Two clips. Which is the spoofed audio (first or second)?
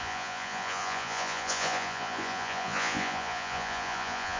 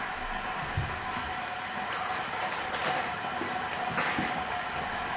first